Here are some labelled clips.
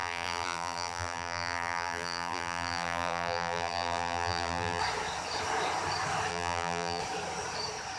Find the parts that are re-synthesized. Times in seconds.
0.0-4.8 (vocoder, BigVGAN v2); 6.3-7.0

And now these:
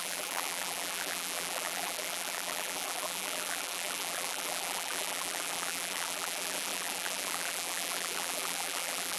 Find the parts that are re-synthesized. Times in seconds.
0.0-9.2 (vocoder, BigVGAN v2)

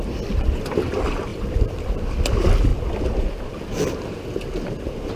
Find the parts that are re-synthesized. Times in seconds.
1.3-2.0 (vocoder, BigVGAN v2)

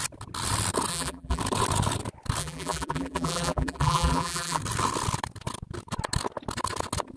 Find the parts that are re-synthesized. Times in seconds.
0.9-1.4 (vocoder, BigVGAN v2); 2.4-4.6

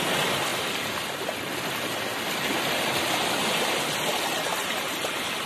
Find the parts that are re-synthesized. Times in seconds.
4.5-5.5 (vocoder, BigVGAN v2)